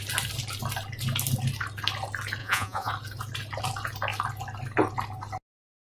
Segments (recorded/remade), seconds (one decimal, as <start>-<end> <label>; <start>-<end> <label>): 0.0-2.4 recorded; 2.4-2.9 remade; 2.9-6.0 recorded